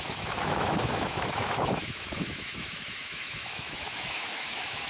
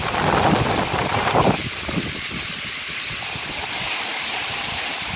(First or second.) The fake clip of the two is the first